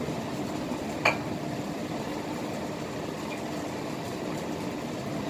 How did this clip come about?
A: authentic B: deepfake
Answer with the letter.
A